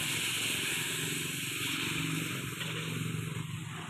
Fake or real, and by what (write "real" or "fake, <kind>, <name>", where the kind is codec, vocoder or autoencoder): real